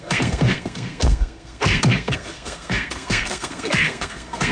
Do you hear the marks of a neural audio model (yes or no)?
yes